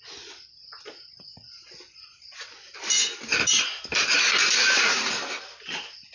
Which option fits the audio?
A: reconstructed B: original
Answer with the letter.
B